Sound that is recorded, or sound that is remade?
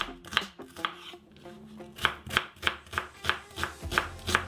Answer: recorded